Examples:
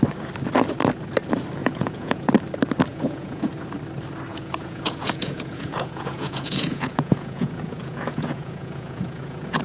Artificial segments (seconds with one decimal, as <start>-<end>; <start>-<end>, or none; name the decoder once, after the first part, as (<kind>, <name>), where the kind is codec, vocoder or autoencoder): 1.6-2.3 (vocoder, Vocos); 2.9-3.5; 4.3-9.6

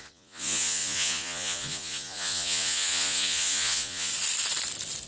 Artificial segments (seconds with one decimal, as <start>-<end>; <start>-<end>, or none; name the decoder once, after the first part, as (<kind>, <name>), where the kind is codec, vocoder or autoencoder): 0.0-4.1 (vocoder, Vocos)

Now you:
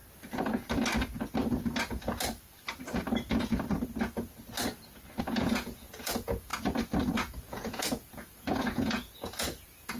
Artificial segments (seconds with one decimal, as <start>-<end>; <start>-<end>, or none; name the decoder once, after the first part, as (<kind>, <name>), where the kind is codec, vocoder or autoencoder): 5.2-6.5 (vocoder, Vocos); 7.1-10.0